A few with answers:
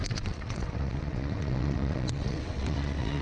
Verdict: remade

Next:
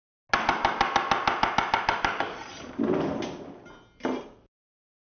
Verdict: recorded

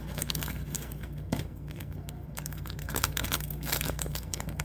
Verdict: remade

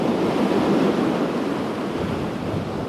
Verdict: recorded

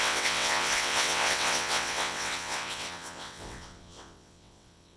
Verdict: remade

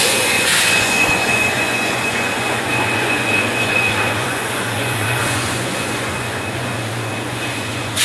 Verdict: remade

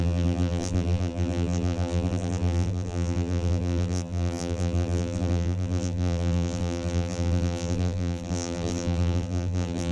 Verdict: remade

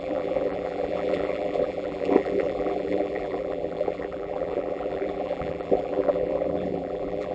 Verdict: remade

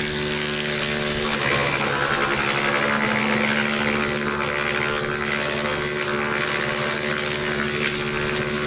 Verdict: recorded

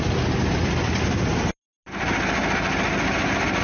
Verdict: recorded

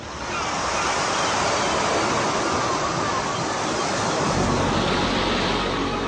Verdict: recorded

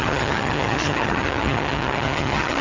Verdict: remade